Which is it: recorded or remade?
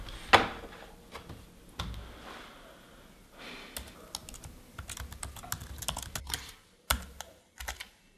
recorded